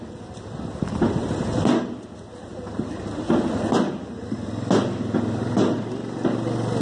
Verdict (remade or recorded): recorded